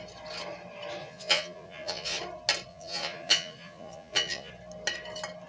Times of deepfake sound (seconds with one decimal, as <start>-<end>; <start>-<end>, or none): 1.0-2.2; 2.7-4.5